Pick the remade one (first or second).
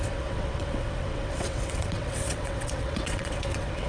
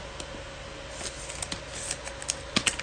first